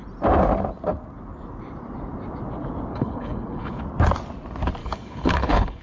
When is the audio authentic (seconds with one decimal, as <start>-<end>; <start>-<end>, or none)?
0.0-2.9; 3.8-4.8